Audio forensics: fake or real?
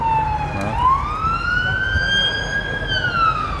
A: real